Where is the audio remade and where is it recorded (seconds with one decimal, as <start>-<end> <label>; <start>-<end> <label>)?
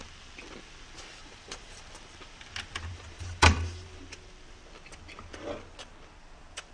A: 0.0-1.2 recorded; 1.2-1.8 remade; 1.8-2.9 recorded; 2.9-4.0 remade; 4.0-6.7 recorded